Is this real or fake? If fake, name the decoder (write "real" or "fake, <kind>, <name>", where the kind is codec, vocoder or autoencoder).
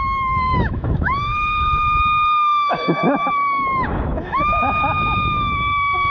fake, autoencoder, DAC-VAE